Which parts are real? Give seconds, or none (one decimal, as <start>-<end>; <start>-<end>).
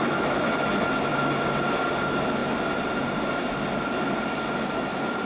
0.5-5.3